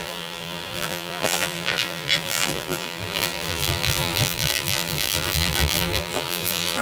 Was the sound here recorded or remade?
remade